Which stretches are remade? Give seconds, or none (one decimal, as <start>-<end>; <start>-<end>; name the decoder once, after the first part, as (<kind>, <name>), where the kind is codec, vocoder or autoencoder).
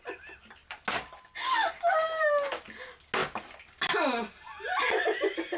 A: none